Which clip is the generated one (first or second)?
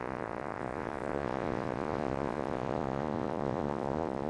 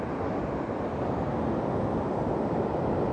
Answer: first